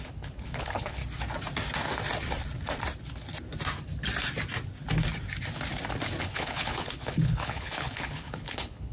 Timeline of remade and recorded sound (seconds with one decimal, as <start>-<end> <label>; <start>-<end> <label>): 0.0-1.0 remade; 1.0-6.2 recorded; 6.2-8.9 remade